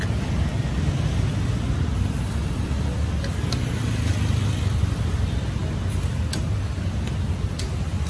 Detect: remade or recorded recorded